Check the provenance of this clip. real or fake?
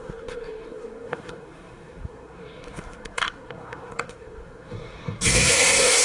fake